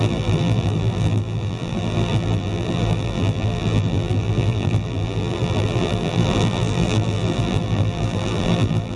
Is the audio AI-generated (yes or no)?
yes